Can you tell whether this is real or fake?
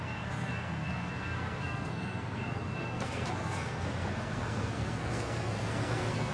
fake